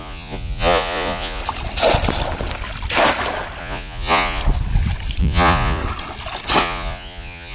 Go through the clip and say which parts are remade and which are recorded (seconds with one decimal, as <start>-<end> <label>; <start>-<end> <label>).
0.0-1.4 remade; 1.4-3.6 recorded; 3.6-4.4 remade; 4.4-5.2 recorded; 5.2-5.8 remade; 5.8-6.6 recorded; 6.6-7.5 remade